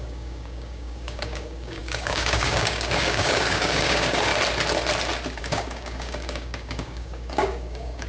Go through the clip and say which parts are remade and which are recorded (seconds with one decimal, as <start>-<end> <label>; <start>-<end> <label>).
0.0-4.3 remade; 4.3-5.4 recorded; 5.4-8.1 remade